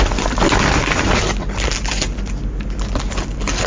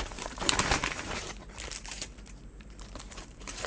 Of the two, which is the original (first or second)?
first